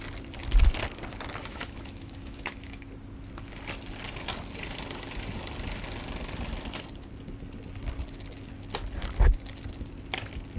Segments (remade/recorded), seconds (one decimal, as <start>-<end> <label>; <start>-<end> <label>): 0.0-1.4 recorded; 1.4-2.9 remade; 2.9-10.6 recorded